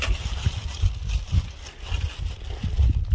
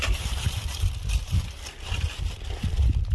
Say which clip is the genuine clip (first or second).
first